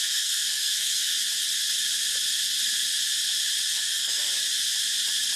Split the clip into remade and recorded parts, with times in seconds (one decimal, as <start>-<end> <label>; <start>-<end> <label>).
0.0-1.1 remade; 1.1-3.7 recorded; 3.7-4.3 remade; 4.3-5.4 recorded